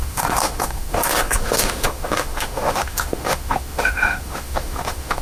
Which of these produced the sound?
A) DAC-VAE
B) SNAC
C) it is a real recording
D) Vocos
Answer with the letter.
A